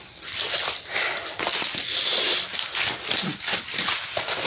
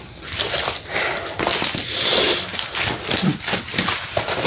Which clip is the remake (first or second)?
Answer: first